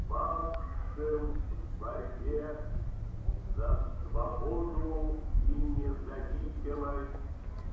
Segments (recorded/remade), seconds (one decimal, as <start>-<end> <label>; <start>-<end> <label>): 0.0-0.4 recorded; 0.4-1.3 remade; 1.3-4.0 recorded; 4.0-6.4 remade; 6.4-7.7 recorded